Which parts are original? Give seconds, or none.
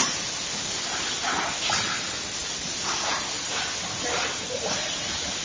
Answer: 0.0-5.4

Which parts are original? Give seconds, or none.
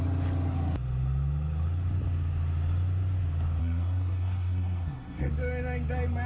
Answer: 0.0-3.6; 5.3-6.3